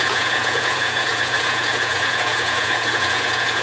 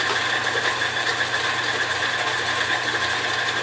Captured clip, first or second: second